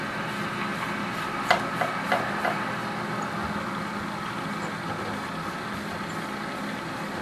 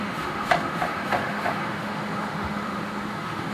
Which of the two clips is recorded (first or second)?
first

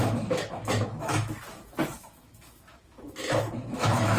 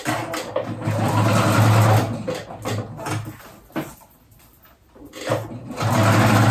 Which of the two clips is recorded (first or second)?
second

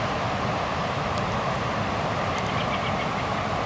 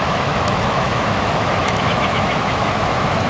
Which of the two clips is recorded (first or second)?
first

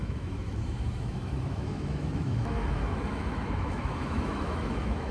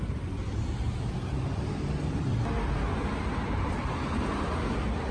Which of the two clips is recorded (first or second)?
second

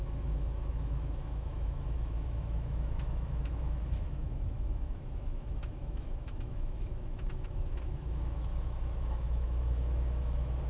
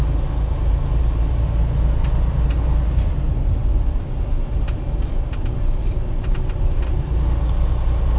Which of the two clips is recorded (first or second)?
second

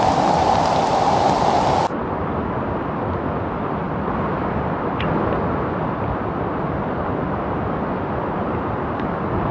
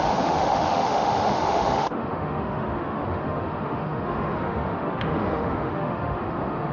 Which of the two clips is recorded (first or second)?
first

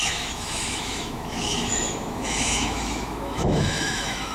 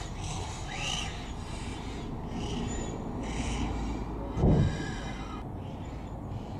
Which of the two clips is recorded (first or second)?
second